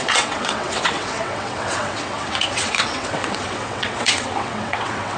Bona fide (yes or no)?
no